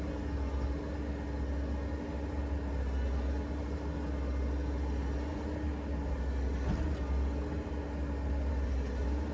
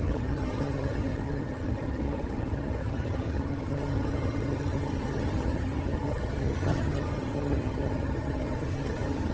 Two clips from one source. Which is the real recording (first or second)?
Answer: first